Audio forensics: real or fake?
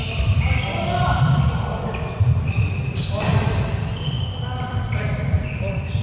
fake